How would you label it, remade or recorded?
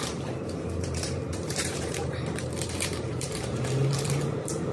remade